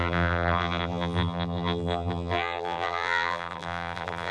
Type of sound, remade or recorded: remade